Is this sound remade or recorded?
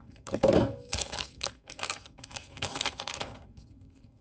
remade